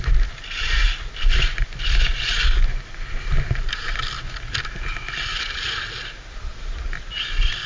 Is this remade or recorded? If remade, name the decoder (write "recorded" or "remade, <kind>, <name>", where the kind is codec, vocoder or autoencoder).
recorded